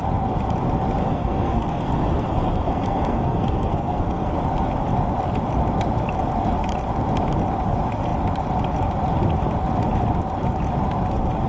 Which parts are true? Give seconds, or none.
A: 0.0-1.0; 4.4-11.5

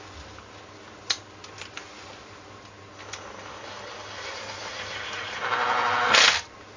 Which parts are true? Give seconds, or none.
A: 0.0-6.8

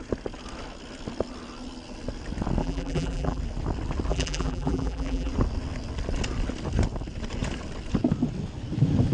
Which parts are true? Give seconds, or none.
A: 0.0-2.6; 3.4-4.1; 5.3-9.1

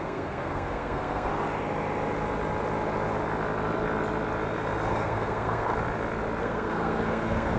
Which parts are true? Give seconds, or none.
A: 1.3-4.9; 5.7-6.4

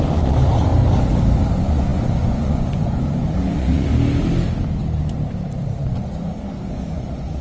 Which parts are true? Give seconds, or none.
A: 0.7-1.5; 3.9-5.8